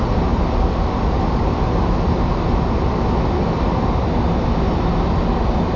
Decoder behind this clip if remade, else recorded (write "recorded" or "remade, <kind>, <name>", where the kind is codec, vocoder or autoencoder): recorded